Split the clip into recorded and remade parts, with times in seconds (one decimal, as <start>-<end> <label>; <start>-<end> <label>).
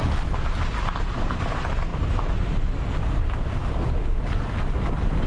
0.0-0.7 recorded; 0.7-1.9 remade; 1.9-5.3 recorded